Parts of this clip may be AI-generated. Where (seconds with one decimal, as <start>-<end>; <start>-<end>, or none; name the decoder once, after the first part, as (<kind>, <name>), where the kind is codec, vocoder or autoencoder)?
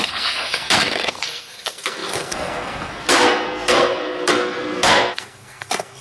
0.0-6.0 (codec, SNAC)